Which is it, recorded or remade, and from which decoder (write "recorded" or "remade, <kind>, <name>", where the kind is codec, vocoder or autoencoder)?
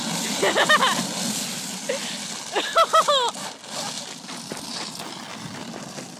recorded